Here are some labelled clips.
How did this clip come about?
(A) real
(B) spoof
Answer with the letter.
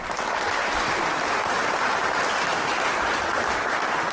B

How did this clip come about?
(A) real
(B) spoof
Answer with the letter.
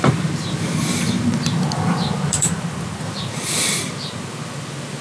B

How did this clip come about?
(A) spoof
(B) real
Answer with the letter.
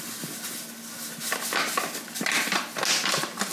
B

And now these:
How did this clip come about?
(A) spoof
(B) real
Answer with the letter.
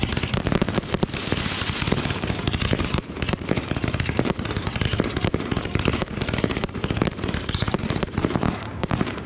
A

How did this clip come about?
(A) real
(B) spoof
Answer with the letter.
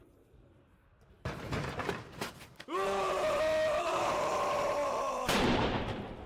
B